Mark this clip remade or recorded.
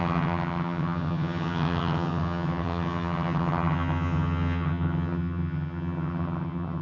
remade